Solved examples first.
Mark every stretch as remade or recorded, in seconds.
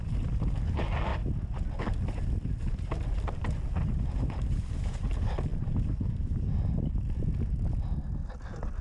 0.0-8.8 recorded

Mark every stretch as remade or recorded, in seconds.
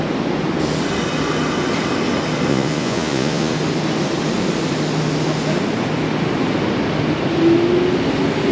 0.0-2.5 recorded; 2.5-3.5 remade; 3.5-8.5 recorded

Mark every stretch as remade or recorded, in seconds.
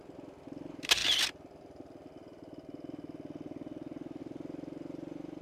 0.0-5.4 recorded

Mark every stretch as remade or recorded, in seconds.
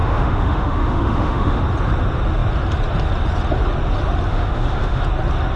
0.0-1.6 remade; 1.6-4.3 recorded; 4.3-5.0 remade; 5.0-5.6 recorded